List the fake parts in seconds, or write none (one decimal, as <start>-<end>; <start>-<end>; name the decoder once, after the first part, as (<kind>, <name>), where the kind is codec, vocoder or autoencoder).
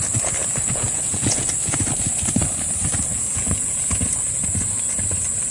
0.4-1.5 (vocoder, Vocos); 3.1-3.8